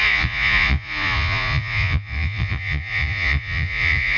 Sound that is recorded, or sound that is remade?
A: remade